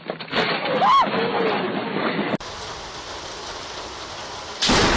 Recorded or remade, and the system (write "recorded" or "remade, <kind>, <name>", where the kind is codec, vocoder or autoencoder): recorded